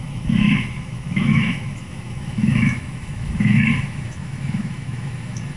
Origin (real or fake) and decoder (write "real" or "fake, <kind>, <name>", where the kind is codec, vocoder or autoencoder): fake, autoencoder, DAC-VAE